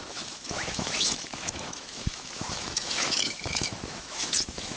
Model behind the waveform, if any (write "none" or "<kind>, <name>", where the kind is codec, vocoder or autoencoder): autoencoder, DAC-VAE